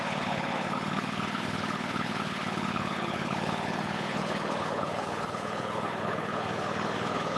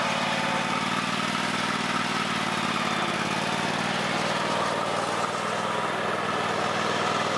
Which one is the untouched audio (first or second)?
second